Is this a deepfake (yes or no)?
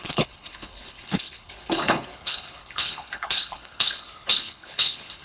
yes